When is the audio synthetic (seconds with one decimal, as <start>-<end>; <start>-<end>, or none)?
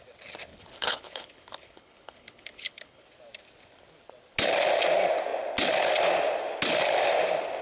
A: 0.5-3.0